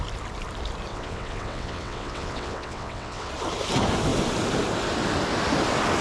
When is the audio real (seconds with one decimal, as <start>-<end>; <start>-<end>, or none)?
0.0-0.9; 3.3-6.0